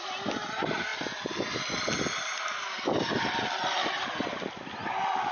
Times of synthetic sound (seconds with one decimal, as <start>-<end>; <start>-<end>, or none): none